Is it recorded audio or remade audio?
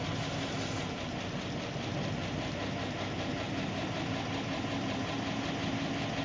recorded